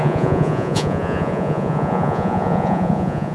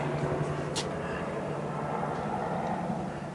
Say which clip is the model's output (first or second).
first